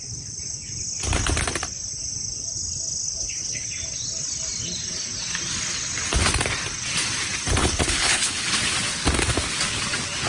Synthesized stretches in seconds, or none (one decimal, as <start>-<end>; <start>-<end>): 3.2-3.7; 7.6-8.6